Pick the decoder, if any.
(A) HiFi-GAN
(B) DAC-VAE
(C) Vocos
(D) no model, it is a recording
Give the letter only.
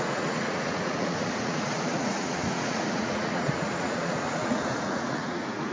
C